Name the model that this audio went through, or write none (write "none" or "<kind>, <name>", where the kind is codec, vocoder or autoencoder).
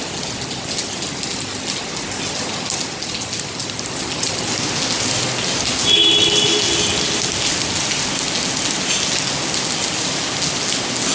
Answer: none